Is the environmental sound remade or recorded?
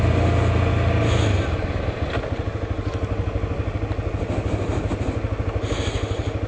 recorded